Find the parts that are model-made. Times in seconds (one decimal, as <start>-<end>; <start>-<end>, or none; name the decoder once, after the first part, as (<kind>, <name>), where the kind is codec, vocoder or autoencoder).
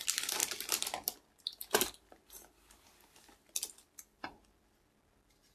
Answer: none